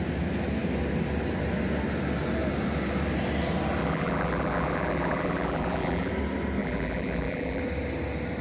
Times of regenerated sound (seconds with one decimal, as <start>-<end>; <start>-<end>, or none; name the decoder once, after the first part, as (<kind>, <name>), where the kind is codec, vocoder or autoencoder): 3.8-6.1 (vocoder, BigVGAN v2); 6.6-7.6